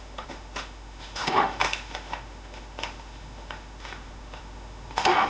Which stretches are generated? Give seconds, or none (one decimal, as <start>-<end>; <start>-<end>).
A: 0.0-5.3